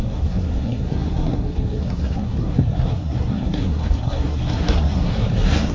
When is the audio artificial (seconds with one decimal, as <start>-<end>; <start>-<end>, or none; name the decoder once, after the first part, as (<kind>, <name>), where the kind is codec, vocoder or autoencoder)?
0.0-5.7 (codec, SNAC)